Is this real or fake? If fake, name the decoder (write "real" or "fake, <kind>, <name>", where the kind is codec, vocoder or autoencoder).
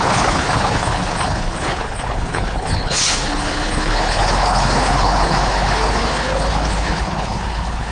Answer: fake, codec, HILCodec